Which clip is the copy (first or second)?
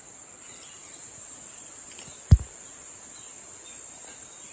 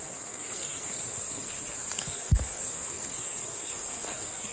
second